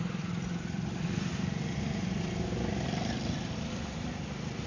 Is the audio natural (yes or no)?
no